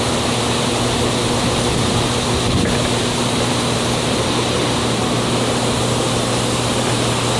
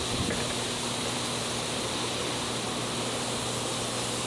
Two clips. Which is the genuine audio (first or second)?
second